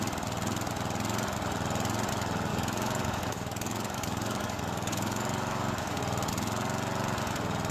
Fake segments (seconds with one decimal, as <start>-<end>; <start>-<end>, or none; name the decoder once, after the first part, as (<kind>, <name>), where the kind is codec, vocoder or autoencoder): 2.5-6.0 (codec, DAC)